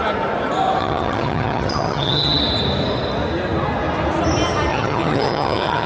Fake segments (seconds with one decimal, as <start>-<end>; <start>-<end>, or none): 0.8-2.4; 4.7-5.9